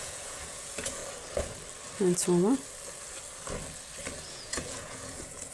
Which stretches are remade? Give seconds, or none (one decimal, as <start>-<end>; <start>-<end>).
0.0-1.0; 4.3-5.5